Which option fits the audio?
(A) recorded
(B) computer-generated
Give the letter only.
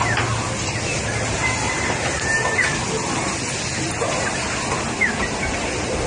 A